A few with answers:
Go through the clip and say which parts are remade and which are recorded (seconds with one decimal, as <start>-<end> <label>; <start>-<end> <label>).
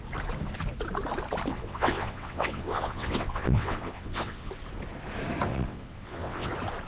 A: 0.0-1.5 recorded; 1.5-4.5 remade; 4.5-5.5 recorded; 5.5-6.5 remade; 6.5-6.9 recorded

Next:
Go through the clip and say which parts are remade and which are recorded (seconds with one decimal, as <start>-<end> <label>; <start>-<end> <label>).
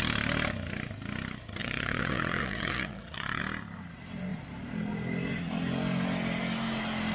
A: 0.0-1.6 recorded; 1.6-3.4 remade; 3.4-7.1 recorded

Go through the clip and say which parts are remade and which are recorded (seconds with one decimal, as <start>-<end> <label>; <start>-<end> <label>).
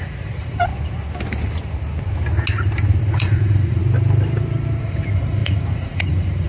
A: 0.0-0.7 remade; 0.7-3.0 recorded; 3.0-3.8 remade; 3.8-4.8 recorded; 4.8-6.5 remade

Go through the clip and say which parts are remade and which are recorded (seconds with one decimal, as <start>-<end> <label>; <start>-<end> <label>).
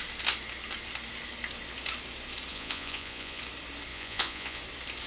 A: 0.0-2.5 recorded; 2.5-3.4 remade; 3.4-3.9 recorded; 3.9-4.6 remade; 4.6-5.1 recorded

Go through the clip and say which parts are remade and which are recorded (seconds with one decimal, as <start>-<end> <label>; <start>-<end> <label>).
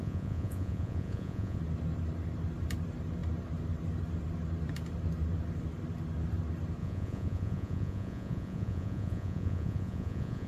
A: 0.0-1.6 remade; 1.6-6.8 recorded; 6.8-10.5 remade